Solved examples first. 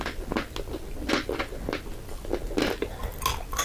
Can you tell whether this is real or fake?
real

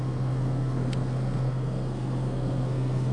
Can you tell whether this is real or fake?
fake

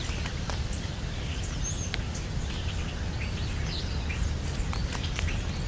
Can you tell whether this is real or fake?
real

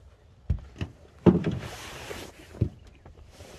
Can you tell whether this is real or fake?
fake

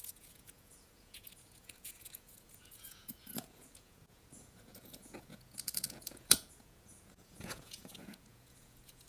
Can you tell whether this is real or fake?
fake